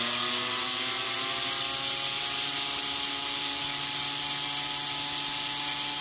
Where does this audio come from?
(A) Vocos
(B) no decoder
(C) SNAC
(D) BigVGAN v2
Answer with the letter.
B